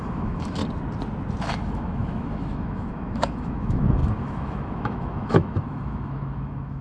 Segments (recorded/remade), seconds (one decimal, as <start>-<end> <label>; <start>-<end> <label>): 0.0-0.6 remade; 0.6-1.4 recorded; 1.4-6.8 remade